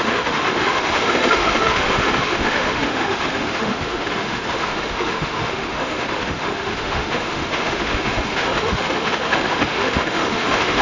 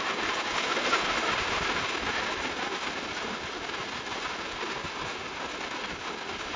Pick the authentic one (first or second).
second